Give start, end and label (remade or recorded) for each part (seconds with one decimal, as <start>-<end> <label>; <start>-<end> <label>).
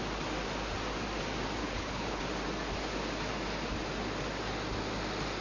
0.0-1.6 recorded; 1.6-2.2 remade; 2.2-5.4 recorded